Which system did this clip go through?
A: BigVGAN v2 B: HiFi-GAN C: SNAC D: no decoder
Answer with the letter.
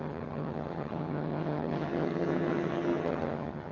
B